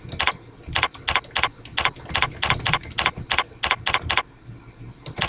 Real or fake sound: real